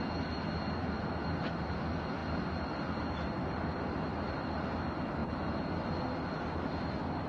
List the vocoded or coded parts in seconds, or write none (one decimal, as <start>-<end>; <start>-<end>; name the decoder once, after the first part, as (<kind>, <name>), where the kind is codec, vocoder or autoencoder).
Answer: none